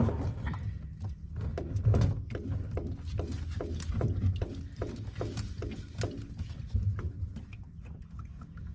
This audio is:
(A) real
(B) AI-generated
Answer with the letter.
A